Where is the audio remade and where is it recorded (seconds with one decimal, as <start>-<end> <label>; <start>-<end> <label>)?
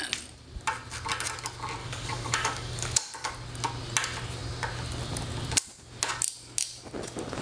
0.0-1.8 recorded; 1.8-3.3 remade; 3.3-7.4 recorded